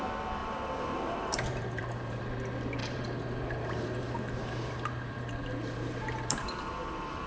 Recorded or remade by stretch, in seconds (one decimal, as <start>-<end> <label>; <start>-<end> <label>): 0.0-0.4 recorded; 0.4-2.2 remade; 2.2-2.8 recorded; 2.8-7.3 remade